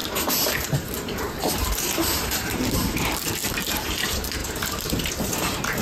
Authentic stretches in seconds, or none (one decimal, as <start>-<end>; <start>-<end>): none